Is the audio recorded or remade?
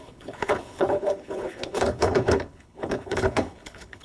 remade